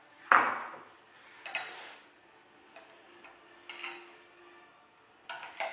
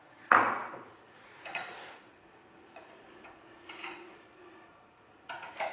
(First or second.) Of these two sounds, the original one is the first